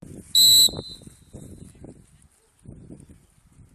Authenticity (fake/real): real